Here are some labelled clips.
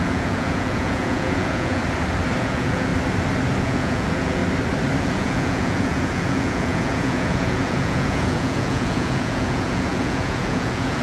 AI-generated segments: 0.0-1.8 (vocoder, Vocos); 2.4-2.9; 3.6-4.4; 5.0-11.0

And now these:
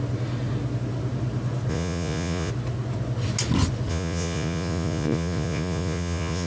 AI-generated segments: 1.7-2.5 (vocoder, Vocos); 3.9-6.5

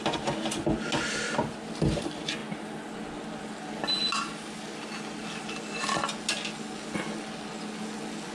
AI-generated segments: none

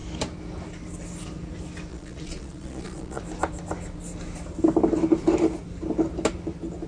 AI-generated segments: 1.9-3.2 (vocoder, Vocos)